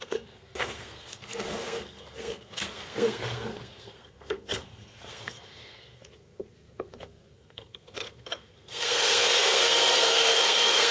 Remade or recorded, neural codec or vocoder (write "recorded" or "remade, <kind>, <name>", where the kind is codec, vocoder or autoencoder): remade, codec, SNAC